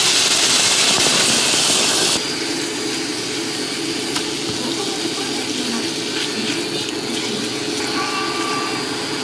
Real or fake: real